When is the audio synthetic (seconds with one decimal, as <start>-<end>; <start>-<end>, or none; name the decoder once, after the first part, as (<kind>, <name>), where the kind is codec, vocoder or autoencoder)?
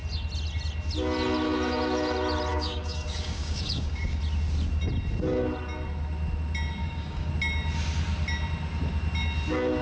2.5-4.2 (codec, DAC); 6.8-7.3